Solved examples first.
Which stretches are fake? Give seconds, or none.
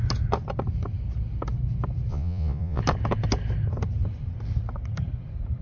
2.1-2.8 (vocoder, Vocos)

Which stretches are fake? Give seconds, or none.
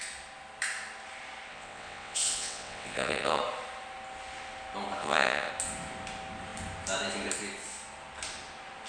1.5-3.4 (vocoder, WaveNeXt); 5.0-5.5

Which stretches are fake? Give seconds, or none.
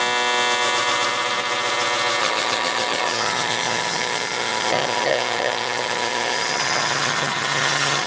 2.2-8.1 (vocoder, HiFi-GAN)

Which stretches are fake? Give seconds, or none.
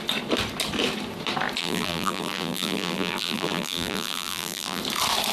1.6-4.8 (vocoder, BigVGAN v2)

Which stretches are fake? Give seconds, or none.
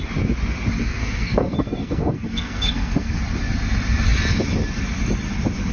0.8-3.2 (codec, SNAC)